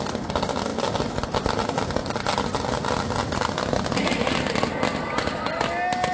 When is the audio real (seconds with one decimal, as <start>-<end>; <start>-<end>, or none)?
0.0-6.1